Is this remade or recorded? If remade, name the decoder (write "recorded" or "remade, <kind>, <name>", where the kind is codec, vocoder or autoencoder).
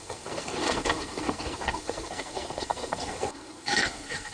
remade, codec, SNAC